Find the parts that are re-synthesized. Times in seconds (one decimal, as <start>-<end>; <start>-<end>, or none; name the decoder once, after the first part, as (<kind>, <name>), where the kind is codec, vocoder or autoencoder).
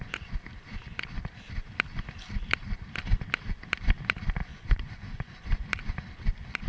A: 4.4-5.7 (vocoder, Vocos)